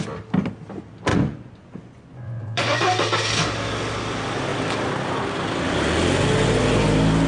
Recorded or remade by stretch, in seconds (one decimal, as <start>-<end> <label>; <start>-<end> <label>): 0.0-1.1 recorded; 1.1-2.8 remade; 2.8-7.3 recorded

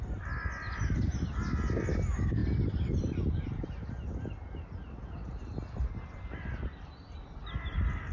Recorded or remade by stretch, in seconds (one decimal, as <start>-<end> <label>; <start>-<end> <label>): 0.0-8.1 recorded